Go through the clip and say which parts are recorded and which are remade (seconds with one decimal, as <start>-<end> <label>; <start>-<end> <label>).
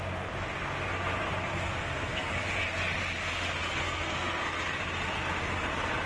0.0-1.5 recorded; 1.5-2.3 remade; 2.3-3.8 recorded; 3.8-4.4 remade; 4.4-6.1 recorded